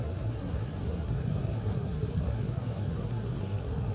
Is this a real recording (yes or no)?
no